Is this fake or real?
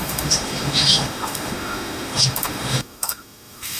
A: fake